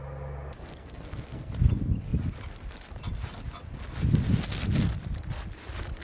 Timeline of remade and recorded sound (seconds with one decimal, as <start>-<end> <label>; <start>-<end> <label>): 0.0-0.7 recorded; 0.7-1.5 remade; 1.5-6.0 recorded